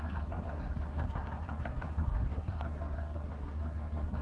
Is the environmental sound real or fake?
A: fake